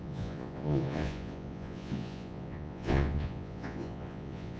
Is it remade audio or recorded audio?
remade